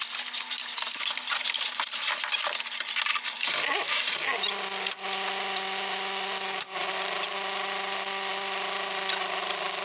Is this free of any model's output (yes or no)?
yes